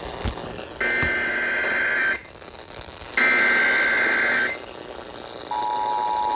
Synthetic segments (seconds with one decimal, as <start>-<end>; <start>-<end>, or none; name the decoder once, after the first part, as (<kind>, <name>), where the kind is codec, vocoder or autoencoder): none